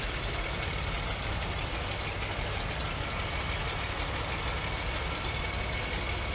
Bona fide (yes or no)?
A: yes